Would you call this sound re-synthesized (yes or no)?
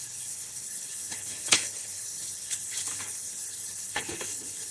yes